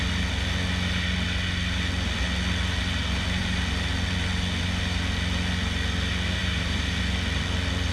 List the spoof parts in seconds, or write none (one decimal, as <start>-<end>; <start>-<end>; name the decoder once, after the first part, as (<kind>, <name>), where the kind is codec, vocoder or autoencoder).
6.4-7.0 (vocoder, BigVGAN v2)